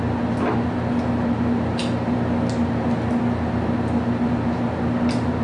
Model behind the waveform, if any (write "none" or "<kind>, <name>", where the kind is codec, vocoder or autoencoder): none